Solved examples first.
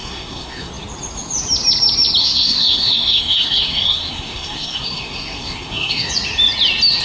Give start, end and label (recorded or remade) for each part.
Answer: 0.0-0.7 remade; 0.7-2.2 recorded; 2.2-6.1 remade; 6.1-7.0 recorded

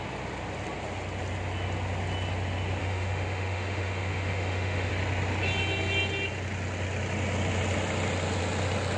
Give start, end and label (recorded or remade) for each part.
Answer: 0.0-2.8 recorded; 2.8-4.9 remade; 4.9-9.0 recorded

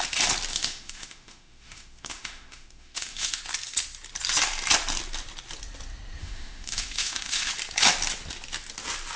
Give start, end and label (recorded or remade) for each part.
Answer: 0.0-0.5 recorded; 0.5-3.4 remade; 3.4-6.2 recorded; 6.2-7.5 remade; 7.5-9.2 recorded

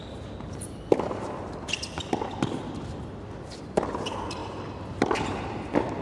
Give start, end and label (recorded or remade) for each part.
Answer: 0.0-6.0 recorded

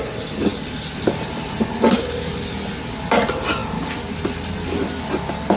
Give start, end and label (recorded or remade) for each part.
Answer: 0.0-3.6 recorded; 3.6-4.2 remade; 4.2-5.6 recorded

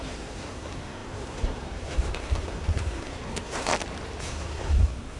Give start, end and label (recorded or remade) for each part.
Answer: 0.0-3.7 remade; 3.7-4.2 recorded; 4.2-5.2 remade

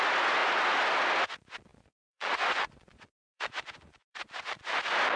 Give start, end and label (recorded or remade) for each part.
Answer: 0.0-1.7 recorded; 1.7-4.8 remade; 4.8-5.2 recorded

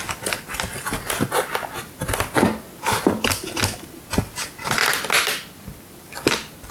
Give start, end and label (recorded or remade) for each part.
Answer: 0.0-6.7 recorded